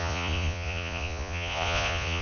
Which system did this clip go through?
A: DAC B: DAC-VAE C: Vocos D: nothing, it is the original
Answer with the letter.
C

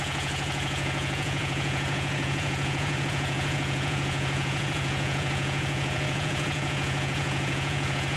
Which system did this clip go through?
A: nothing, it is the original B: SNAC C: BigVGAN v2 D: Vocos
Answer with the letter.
D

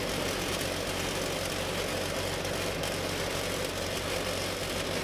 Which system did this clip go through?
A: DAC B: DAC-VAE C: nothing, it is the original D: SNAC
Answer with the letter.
C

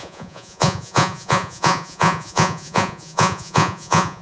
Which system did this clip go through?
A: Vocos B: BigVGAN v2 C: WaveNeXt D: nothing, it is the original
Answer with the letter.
A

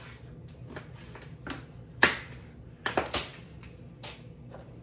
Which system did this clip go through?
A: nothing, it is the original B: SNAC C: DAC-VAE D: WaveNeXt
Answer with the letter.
A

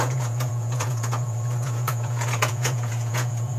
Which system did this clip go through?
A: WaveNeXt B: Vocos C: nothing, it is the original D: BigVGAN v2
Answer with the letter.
B